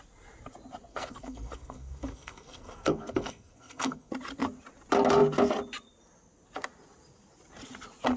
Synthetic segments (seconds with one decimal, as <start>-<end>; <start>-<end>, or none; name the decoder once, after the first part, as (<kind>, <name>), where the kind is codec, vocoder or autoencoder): 0.9-4.1 (codec, SNAC)